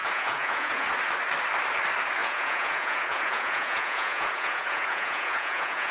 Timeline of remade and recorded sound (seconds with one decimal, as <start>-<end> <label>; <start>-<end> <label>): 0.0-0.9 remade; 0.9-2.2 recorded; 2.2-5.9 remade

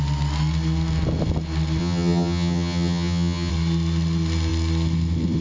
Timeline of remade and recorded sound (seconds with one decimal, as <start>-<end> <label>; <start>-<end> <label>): 0.0-1.8 recorded; 1.8-3.5 remade; 3.5-5.4 recorded

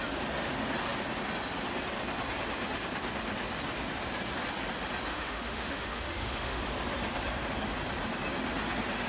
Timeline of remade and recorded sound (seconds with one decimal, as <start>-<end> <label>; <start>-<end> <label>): 0.0-5.1 recorded; 5.1-6.6 remade; 6.6-9.1 recorded